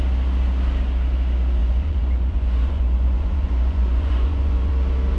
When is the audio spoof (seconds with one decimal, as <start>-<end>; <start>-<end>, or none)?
1.6-4.7